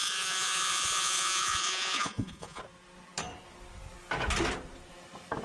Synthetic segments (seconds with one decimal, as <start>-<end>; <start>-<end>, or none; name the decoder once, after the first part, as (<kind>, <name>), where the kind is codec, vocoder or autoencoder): 0.0-2.6 (vocoder, Vocos)